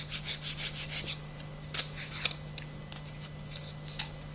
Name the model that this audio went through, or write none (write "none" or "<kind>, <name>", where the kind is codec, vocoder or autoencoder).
none